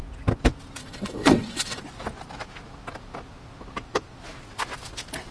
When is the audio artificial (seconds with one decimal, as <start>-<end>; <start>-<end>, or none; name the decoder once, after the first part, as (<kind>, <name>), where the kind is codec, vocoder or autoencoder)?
0.8-1.8 (vocoder, WaveNeXt)

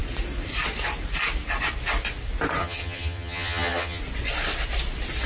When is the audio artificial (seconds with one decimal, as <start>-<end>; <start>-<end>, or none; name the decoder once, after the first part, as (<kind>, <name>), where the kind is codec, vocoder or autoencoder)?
2.6-4.0 (vocoder, HiFi-GAN)